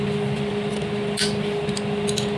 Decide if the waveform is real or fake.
real